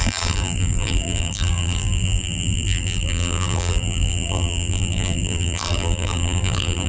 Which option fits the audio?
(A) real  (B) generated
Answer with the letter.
B